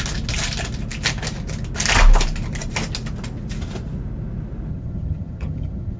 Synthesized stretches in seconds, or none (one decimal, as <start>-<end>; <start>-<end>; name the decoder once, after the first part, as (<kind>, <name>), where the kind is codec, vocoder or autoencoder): 4.7-6.0 (vocoder, HiFi-GAN)